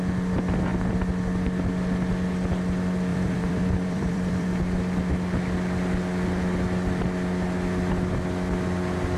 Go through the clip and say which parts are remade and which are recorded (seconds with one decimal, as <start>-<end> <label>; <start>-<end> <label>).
0.0-3.1 recorded; 3.1-4.5 remade; 4.5-9.2 recorded